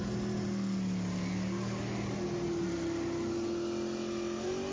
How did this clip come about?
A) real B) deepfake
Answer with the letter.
A